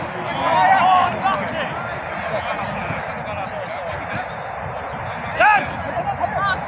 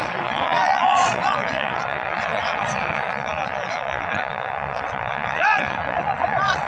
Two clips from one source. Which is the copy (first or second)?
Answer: second